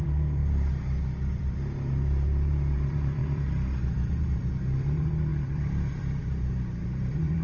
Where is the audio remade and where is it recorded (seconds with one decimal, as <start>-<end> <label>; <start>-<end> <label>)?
0.0-7.4 remade